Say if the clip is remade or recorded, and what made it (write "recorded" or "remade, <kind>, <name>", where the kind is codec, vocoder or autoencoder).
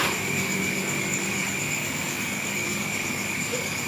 remade, codec, DAC